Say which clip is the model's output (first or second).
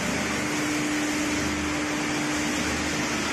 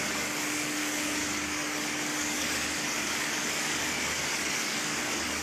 second